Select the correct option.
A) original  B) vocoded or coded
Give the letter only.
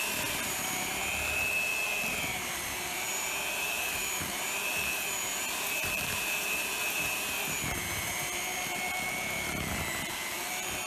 B